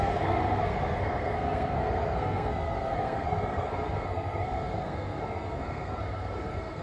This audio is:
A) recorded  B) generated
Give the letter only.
B